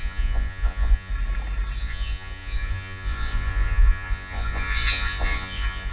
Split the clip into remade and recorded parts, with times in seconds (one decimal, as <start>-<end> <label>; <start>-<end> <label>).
0.0-1.1 remade; 1.1-1.8 recorded; 1.8-5.9 remade